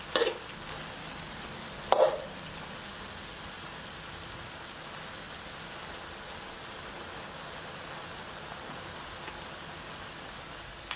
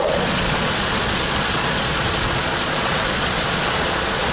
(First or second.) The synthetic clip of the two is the second